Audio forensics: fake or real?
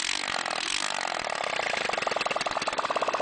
real